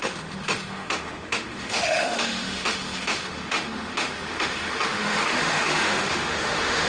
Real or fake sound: fake